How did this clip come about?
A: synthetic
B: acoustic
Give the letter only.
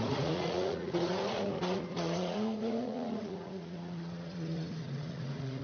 A